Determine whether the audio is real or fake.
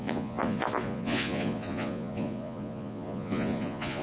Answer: fake